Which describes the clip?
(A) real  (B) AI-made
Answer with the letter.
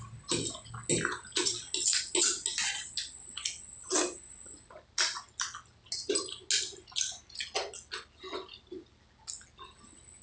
A